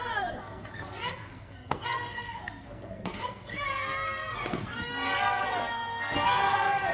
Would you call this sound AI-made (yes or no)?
yes